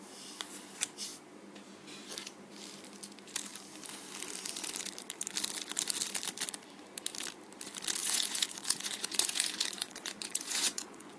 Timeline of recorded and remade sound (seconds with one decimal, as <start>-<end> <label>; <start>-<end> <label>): 0.0-8.0 recorded; 8.0-11.2 remade